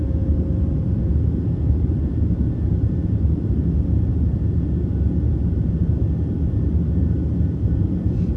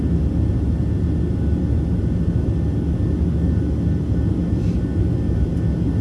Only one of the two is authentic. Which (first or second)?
second